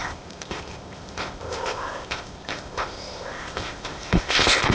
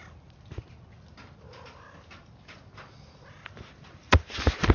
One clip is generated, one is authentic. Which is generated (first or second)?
first